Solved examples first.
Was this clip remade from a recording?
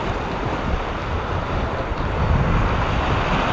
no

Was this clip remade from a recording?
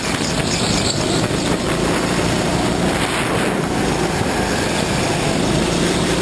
no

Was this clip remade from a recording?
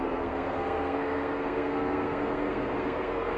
yes